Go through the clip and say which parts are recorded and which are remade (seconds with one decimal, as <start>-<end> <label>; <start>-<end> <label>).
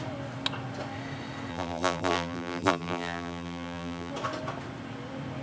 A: 0.0-1.5 recorded; 1.5-4.1 remade; 4.1-5.4 recorded